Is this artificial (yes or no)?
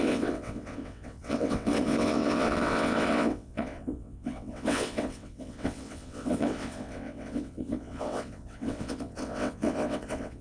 yes